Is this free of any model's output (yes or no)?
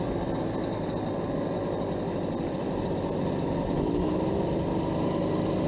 yes